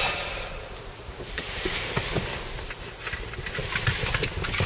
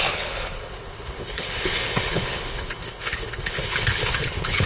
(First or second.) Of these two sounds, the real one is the first